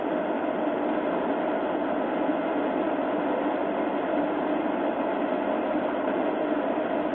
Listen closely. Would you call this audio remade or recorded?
recorded